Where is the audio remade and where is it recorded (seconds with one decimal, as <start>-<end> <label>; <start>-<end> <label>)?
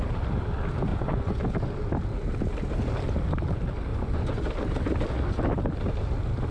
0.0-0.9 recorded; 0.9-1.4 remade; 1.4-3.9 recorded; 3.9-4.5 remade; 4.5-6.5 recorded